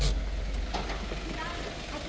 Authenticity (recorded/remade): recorded